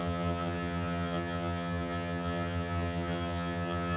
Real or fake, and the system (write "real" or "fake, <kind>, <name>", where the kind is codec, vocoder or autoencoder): fake, vocoder, HiFi-GAN